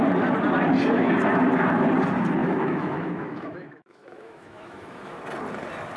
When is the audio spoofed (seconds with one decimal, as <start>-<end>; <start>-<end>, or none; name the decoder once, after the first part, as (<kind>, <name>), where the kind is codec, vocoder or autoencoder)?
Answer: 2.4-5.2 (autoencoder, DAC-VAE)